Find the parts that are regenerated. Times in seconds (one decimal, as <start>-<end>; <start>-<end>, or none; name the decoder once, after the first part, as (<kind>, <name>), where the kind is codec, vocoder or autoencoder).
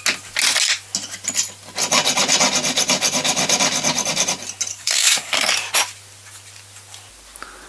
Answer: 4.7-5.5 (codec, SNAC)